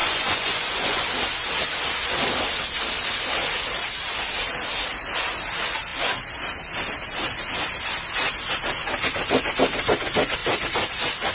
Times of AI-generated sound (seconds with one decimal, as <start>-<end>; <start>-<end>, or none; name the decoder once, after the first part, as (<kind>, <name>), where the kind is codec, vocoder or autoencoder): 0.0-1.0 (vocoder, Vocos)